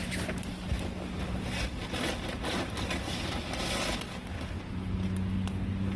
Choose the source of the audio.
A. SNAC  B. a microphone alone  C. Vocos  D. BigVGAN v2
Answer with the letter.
B